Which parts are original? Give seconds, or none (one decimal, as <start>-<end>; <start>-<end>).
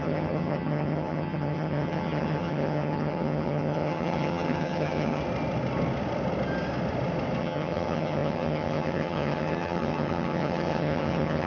5.2-7.4